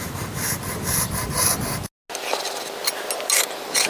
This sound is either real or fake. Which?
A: real